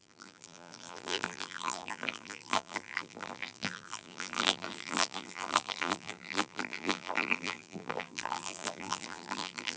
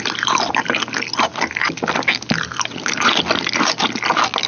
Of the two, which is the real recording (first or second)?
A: second